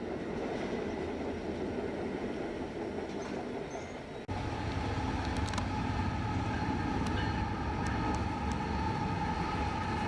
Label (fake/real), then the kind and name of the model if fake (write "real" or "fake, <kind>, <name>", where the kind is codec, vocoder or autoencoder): real